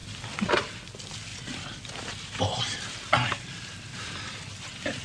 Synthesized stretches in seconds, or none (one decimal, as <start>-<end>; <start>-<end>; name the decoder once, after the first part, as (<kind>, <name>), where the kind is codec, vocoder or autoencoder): 0.0-0.5 (vocoder, BigVGAN v2); 1.3-4.3